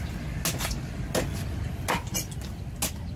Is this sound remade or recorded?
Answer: recorded